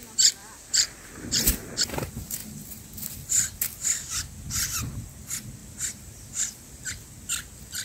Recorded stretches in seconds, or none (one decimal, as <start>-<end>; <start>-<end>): 0.0-0.4; 1.7-7.8

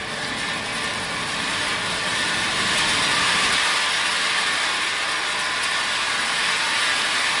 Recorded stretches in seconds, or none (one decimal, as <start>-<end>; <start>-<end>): 0.0-0.9; 1.7-2.1; 3.5-7.4